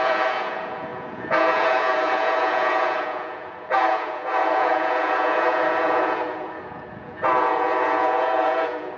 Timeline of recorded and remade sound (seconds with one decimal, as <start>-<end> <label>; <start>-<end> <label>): 0.0-9.0 remade